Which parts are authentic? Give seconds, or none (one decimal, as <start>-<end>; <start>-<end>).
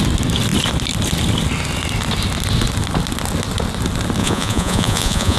0.0-4.2